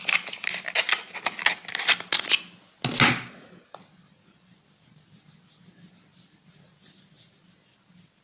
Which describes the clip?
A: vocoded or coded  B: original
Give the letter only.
B